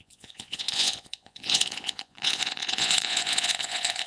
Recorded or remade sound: remade